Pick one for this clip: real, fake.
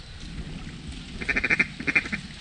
real